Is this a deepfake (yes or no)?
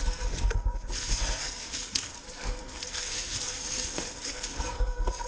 yes